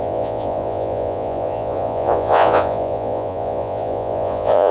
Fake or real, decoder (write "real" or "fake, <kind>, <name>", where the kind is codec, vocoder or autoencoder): fake, vocoder, Vocos